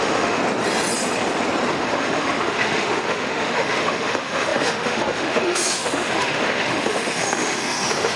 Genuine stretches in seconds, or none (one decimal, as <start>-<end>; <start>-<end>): 0.4-1.7

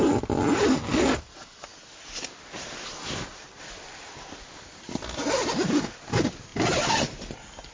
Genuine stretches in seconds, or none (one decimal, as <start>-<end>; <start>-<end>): 0.0-7.7

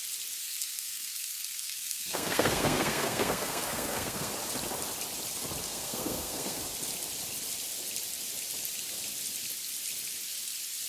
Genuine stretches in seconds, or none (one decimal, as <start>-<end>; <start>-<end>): 0.0-0.4; 4.3-5.6; 6.6-10.9

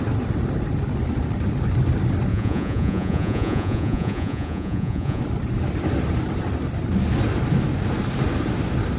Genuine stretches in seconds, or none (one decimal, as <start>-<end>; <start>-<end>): 0.0-2.3; 5.2-9.0

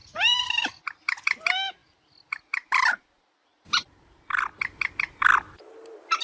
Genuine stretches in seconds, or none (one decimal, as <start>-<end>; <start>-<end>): 0.0-6.2

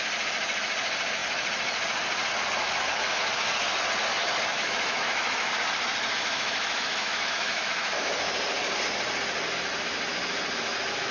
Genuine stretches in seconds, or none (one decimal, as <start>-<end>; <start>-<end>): 0.0-4.5; 5.6-6.1; 8.1-11.1